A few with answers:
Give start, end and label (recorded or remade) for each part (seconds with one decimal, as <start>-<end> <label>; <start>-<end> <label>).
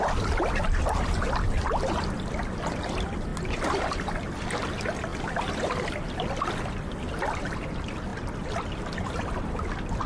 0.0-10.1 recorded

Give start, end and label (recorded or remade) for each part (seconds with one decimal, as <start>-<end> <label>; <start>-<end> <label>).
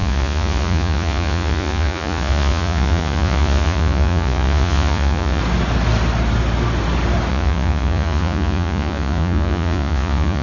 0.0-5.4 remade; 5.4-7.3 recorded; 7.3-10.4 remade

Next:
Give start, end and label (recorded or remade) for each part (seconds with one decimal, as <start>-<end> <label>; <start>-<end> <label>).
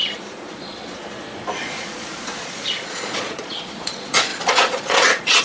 0.0-5.4 remade